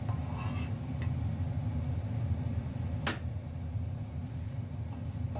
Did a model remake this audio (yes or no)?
no